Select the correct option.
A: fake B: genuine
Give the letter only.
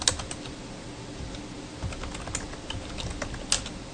B